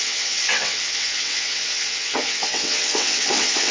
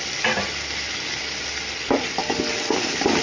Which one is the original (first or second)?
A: second